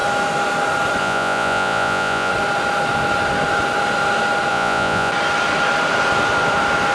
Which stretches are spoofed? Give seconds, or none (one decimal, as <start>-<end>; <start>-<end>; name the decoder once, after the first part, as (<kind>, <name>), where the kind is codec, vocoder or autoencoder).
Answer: 1.0-2.3 (vocoder, Vocos); 4.5-5.1